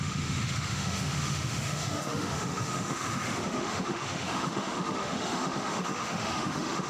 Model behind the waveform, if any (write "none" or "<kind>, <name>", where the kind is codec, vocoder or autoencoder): autoencoder, DAC-VAE